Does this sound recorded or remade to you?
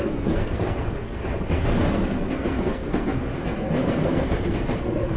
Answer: remade